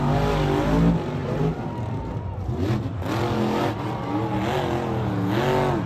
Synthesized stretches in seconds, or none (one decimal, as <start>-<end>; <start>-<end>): none